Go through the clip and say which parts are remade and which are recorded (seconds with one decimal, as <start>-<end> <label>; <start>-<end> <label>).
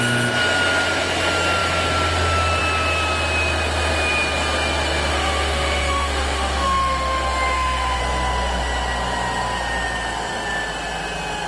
0.0-5.1 recorded; 5.1-8.0 remade; 8.0-11.5 recorded